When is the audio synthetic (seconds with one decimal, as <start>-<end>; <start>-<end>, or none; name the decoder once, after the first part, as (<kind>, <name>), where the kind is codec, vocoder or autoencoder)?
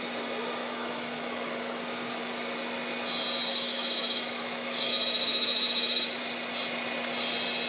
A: 0.6-1.8 (autoencoder, DAC-VAE); 3.5-6.2